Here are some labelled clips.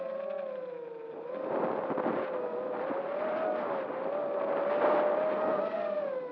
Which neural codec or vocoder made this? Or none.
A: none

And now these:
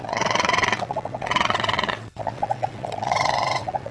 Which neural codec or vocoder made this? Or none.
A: vocoder, WaveNeXt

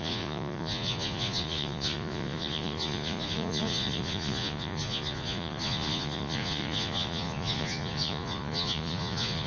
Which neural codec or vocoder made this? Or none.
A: vocoder, Vocos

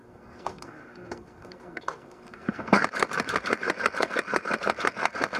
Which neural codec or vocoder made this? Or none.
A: codec, SNAC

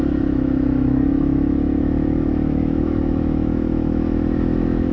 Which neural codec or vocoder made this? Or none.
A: autoencoder, DAC-VAE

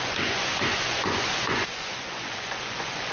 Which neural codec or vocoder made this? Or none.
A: vocoder, Vocos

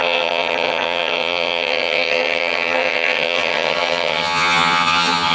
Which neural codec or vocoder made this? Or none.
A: vocoder, HiFi-GAN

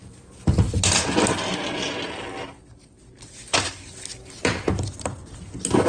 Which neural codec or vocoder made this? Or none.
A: none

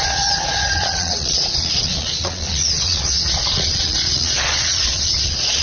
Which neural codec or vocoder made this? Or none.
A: vocoder, Vocos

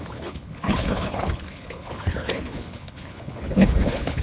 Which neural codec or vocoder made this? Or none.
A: codec, HILCodec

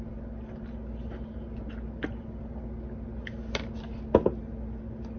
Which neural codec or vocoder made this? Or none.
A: none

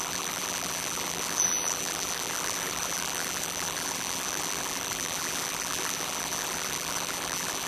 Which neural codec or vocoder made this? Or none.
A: vocoder, BigVGAN v2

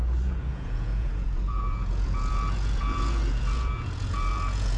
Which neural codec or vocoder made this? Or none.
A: vocoder, Vocos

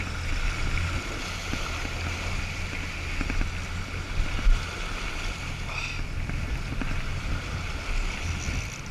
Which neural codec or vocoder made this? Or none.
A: none